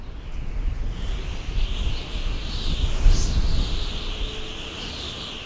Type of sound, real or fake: real